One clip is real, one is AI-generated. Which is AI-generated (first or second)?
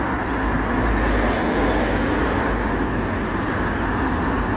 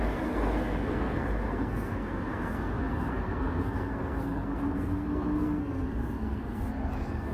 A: second